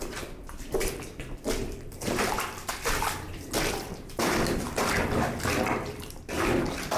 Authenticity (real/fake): fake